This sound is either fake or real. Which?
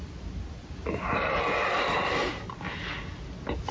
real